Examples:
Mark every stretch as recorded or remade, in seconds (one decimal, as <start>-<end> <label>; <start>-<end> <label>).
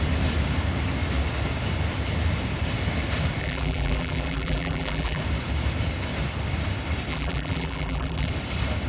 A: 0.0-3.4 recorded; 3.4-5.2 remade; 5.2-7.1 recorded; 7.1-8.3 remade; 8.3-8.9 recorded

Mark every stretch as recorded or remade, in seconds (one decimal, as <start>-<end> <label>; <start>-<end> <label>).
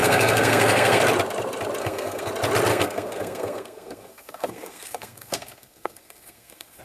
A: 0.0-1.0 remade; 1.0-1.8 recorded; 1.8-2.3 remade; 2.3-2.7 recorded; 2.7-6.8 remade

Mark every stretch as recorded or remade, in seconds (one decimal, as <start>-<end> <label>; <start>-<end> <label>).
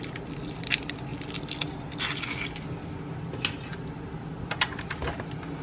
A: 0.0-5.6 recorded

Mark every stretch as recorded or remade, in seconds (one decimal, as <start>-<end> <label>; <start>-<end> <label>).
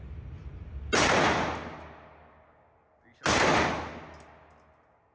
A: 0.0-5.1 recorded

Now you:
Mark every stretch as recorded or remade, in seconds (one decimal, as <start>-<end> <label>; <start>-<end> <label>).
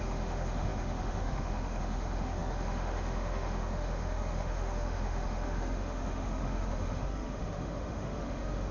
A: 0.0-8.7 remade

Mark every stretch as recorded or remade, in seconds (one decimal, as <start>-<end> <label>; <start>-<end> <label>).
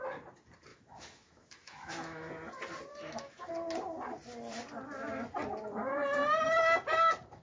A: 0.0-0.7 recorded; 0.7-2.3 remade; 2.3-2.9 recorded; 2.9-3.5 remade; 3.5-7.4 recorded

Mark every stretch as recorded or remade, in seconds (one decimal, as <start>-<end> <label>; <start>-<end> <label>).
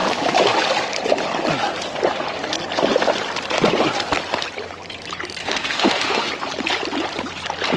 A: 0.0-5.4 recorded; 5.4-6.3 remade; 6.3-7.8 recorded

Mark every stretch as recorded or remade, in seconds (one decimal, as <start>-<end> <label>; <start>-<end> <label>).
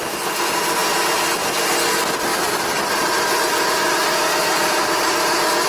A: 0.0-2.3 recorded; 2.3-3.0 remade; 3.0-5.7 recorded